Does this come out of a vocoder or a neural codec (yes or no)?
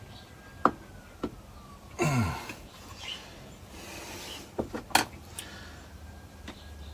no